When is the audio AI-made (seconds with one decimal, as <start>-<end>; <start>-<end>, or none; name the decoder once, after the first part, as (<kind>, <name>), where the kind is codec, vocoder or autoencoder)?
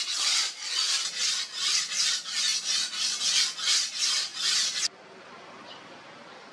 0.0-2.5 (vocoder, BigVGAN v2); 3.2-4.3; 5.3-6.5